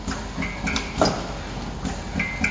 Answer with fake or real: real